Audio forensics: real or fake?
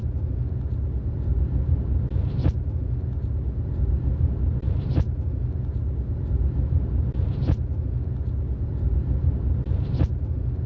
real